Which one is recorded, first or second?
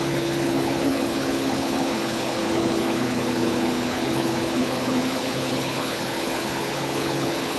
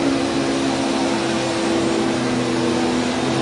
second